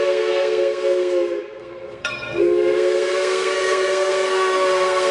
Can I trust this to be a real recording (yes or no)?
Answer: no